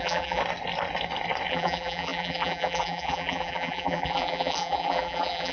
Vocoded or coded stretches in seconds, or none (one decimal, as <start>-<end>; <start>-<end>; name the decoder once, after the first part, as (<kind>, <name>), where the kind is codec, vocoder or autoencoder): 0.0-0.4 (vocoder, BigVGAN v2); 1.5-5.5